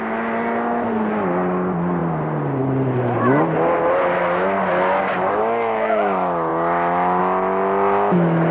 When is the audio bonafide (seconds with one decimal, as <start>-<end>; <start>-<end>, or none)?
0.0-8.5